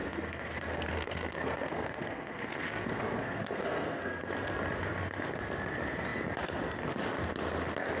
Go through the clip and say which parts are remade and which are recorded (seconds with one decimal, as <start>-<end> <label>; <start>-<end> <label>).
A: 0.0-4.2 remade; 4.2-8.0 recorded